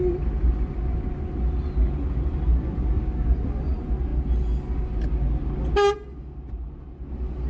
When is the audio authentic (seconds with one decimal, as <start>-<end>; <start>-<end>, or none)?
0.0-7.5